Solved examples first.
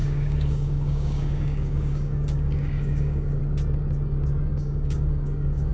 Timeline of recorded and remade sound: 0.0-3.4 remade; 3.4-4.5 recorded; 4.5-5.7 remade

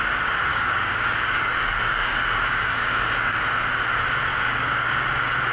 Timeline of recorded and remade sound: 0.0-0.5 recorded; 0.5-3.4 remade; 3.4-4.3 recorded; 4.3-5.0 remade; 5.0-5.5 recorded

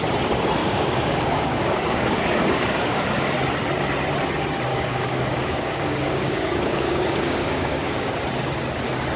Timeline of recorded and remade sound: 0.0-0.6 recorded; 0.6-3.4 remade; 3.4-4.7 recorded; 4.7-8.1 remade; 8.1-9.2 recorded

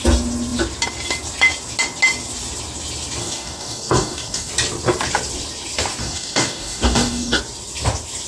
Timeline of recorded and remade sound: 0.0-3.2 recorded; 3.2-4.5 remade; 4.5-6.0 recorded; 6.0-7.4 remade; 7.4-8.3 recorded

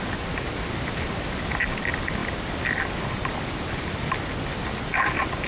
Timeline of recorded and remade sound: 0.0-5.5 recorded

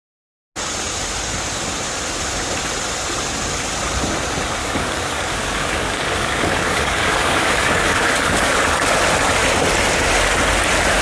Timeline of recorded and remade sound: 0.0-4.6 recorded; 4.6-8.7 remade; 8.7-11.0 recorded

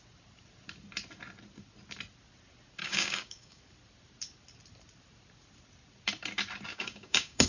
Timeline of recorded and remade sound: 0.0-2.8 recorded; 2.8-3.6 remade; 3.6-6.7 recorded; 6.7-7.5 remade

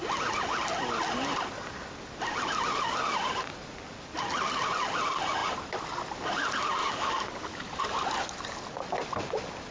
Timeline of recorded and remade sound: 0.0-6.8 recorded; 6.8-7.8 remade; 7.8-9.7 recorded